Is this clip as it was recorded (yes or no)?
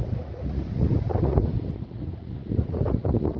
no